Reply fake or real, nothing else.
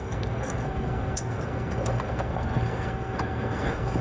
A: fake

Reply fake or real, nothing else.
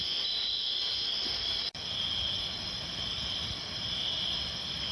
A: real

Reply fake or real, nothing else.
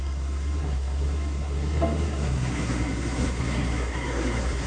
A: fake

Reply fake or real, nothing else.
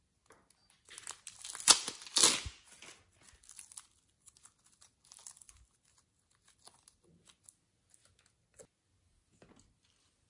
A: real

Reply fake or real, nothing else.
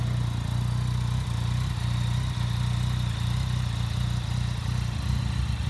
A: real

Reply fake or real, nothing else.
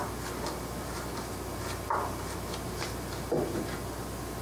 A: real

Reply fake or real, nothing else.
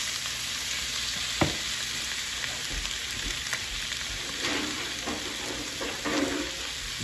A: real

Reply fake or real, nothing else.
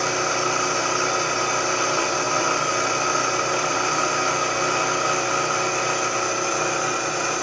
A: real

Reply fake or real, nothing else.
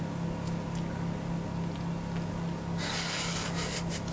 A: real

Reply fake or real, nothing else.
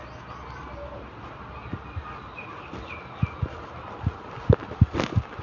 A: real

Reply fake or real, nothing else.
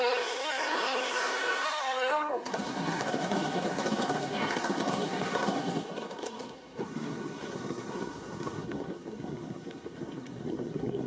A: fake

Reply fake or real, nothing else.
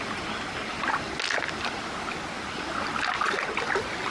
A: real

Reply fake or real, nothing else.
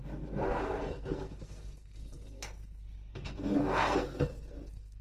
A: fake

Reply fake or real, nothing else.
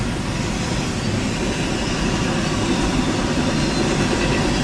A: real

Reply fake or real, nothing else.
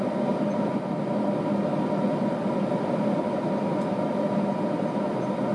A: real